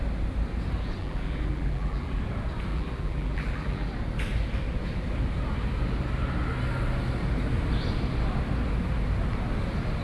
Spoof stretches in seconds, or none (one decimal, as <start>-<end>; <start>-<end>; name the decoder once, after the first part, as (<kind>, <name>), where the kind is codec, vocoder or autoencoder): 1.0-2.2 (vocoder, BigVGAN v2); 2.7-3.9